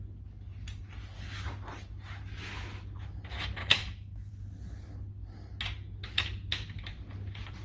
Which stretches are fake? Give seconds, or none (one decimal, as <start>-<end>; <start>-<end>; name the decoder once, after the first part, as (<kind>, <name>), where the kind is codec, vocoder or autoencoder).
3.6-4.3 (autoencoder, DAC-VAE)